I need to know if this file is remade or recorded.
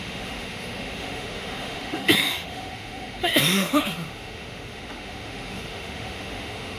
remade